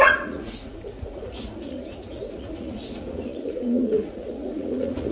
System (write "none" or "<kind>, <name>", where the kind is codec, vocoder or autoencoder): vocoder, Vocos